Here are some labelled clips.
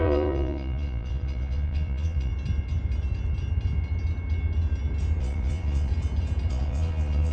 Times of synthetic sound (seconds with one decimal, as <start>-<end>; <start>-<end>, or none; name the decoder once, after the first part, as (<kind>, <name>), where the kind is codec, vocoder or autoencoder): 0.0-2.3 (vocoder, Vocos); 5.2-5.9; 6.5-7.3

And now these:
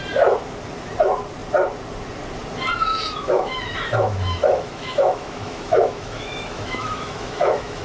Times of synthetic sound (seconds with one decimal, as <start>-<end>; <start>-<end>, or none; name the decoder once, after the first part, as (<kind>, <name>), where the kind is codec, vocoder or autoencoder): 2.9-7.8 (autoencoder, DAC-VAE)

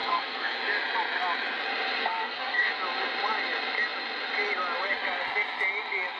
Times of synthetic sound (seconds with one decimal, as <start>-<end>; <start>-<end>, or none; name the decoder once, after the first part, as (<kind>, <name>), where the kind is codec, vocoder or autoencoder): 0.0-0.6 (codec, SNAC); 2.0-2.7